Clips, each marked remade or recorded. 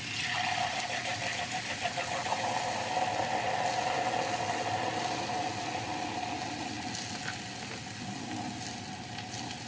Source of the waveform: recorded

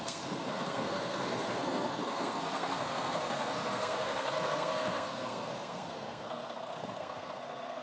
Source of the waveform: remade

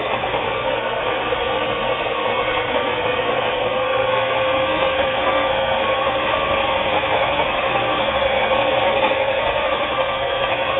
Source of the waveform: remade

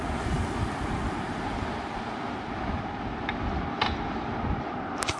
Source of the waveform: recorded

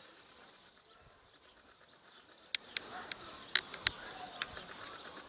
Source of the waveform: recorded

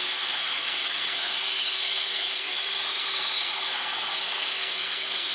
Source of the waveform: remade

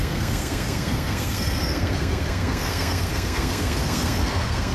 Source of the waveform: remade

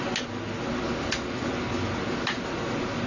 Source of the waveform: recorded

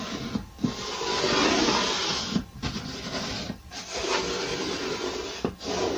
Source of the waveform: recorded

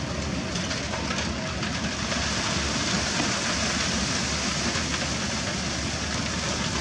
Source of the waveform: recorded